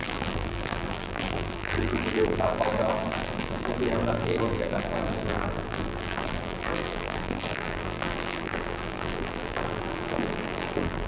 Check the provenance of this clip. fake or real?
fake